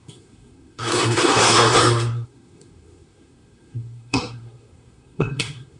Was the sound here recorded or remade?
remade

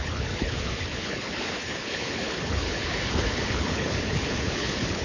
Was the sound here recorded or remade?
remade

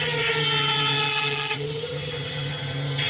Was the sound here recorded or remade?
remade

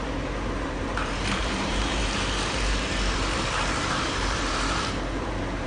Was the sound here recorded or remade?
remade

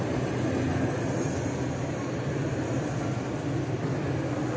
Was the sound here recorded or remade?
recorded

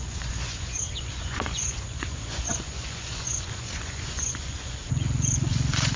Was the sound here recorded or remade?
remade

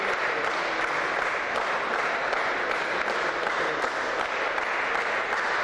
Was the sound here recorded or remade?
recorded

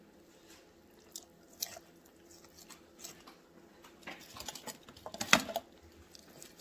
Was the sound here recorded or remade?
recorded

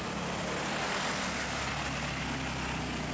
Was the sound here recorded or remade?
recorded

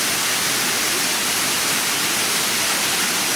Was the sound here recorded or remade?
recorded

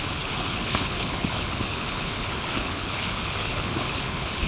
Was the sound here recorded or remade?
remade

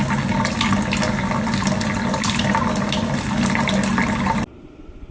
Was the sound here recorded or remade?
recorded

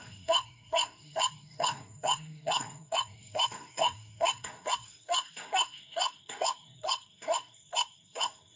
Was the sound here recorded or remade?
remade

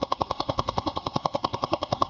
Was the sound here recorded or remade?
remade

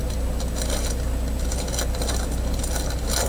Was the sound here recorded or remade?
recorded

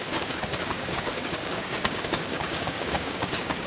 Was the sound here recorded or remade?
remade